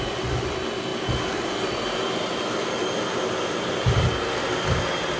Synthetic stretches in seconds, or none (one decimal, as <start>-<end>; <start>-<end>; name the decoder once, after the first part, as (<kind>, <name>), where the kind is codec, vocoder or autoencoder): none